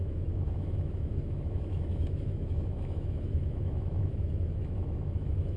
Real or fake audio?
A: fake